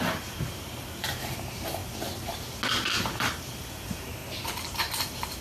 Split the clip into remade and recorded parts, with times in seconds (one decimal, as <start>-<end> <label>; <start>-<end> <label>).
0.0-1.8 remade; 1.8-2.9 recorded; 2.9-4.2 remade; 4.2-4.7 recorded; 4.7-5.4 remade